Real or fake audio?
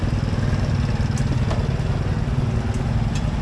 real